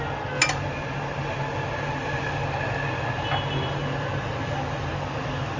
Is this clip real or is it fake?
real